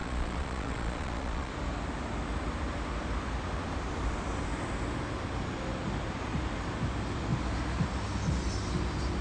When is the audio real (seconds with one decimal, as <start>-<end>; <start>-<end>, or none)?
1.5-9.2